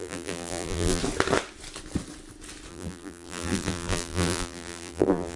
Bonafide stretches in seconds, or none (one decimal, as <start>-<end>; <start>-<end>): 1.0-2.7